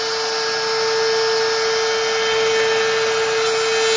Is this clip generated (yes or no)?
no